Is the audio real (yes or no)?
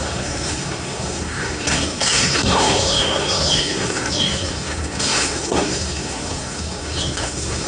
no